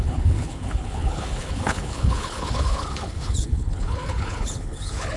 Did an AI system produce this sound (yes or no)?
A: yes